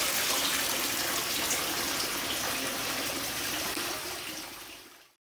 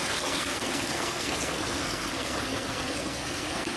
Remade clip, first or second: second